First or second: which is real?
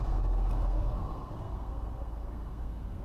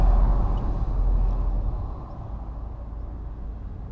second